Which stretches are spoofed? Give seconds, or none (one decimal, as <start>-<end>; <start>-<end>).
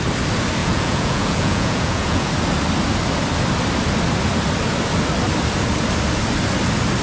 0.6-2.3